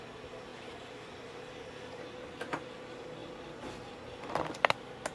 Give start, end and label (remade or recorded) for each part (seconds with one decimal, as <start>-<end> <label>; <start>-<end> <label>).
0.0-0.5 recorded; 0.5-1.1 remade; 1.1-5.1 recorded